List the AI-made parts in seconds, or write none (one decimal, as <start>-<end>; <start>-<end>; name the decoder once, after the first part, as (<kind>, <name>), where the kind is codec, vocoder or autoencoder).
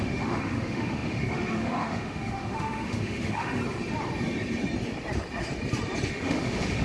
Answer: 0.0-3.6 (autoencoder, DAC-VAE); 6.1-6.8